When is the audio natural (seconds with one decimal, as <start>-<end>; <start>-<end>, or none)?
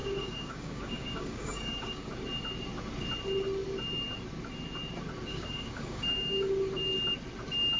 2.1-5.3; 6.5-7.8